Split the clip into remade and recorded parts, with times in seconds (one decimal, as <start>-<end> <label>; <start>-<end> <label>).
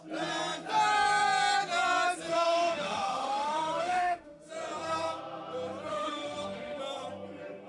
0.0-2.3 recorded; 2.3-4.5 remade; 4.5-5.9 recorded; 5.9-6.8 remade; 6.8-7.7 recorded